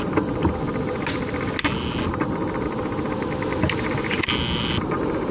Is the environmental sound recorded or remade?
recorded